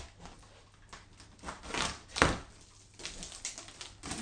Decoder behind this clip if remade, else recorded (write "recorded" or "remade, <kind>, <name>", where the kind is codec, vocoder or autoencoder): recorded